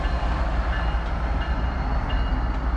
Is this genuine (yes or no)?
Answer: yes